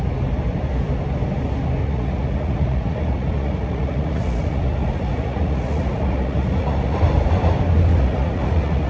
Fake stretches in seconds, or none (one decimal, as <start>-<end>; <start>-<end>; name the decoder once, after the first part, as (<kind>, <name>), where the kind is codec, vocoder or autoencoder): 1.8-7.0 (vocoder, Vocos); 7.9-8.9